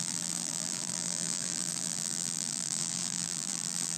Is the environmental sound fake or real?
fake